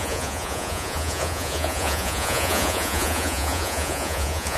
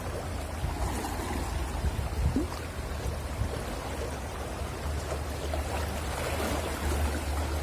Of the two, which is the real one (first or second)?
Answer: second